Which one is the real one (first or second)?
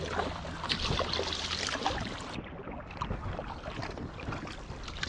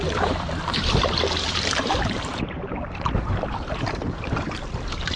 first